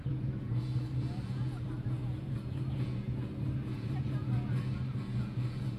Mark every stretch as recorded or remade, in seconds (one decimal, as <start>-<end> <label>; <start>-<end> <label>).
0.0-5.8 remade